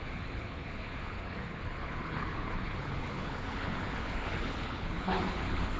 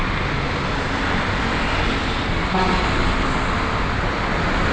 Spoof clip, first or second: first